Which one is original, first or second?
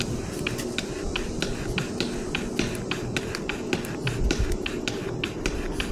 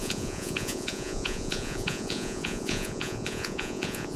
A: first